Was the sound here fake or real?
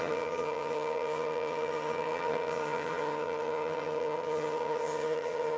fake